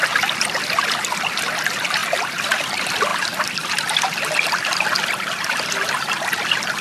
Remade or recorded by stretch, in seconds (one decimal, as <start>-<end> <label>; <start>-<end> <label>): 0.0-2.0 recorded; 2.0-2.7 remade; 2.7-3.1 recorded; 3.1-6.8 remade